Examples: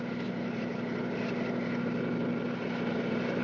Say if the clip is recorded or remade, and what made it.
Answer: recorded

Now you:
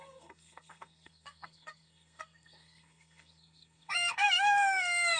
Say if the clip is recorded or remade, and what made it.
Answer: remade, codec, SNAC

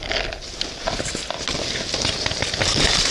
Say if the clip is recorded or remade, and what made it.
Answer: recorded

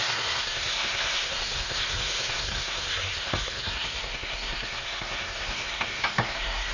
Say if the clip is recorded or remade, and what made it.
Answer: remade, codec, SNAC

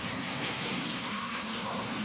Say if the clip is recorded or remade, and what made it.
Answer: remade, codec, SNAC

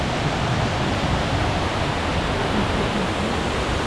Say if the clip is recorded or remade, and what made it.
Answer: recorded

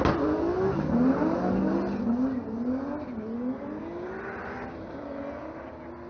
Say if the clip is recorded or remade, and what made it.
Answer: recorded